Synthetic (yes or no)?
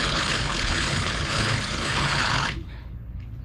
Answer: yes